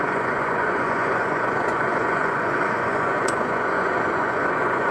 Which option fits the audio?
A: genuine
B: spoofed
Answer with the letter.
B